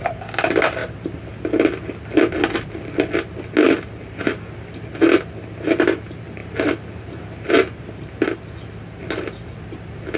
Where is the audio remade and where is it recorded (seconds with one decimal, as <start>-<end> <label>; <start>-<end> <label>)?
0.0-6.4 recorded; 6.4-7.5 remade; 7.5-10.2 recorded